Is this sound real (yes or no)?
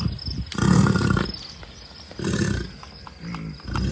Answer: yes